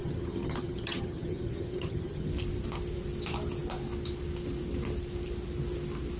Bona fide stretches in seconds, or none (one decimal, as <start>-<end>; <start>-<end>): 2.3-6.2

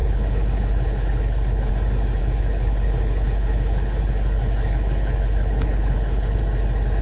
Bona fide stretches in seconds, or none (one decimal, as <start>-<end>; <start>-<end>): 1.7-2.2; 6.4-7.0

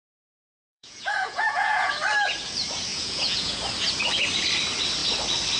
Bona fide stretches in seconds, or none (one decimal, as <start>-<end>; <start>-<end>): 0.0-0.7; 1.9-2.9; 3.6-5.6

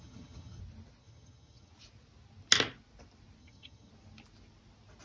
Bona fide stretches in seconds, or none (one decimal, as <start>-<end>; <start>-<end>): 0.6-1.0; 1.7-3.4; 3.9-5.0

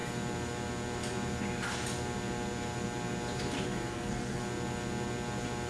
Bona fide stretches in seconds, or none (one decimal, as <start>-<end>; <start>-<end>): 0.0-3.9; 4.4-5.7

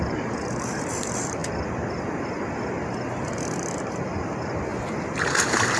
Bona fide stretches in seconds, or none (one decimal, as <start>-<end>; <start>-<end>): 1.4-3.8; 4.7-5.2

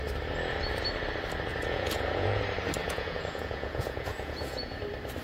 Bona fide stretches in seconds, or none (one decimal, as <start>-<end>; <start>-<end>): 0.0-1.5; 2.4-2.8; 4.8-5.2